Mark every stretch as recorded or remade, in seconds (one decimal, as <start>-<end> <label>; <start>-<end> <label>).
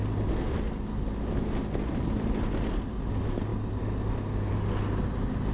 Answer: 0.0-5.5 recorded